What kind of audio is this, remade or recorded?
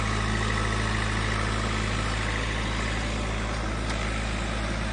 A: recorded